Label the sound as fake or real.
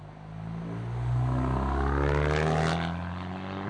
real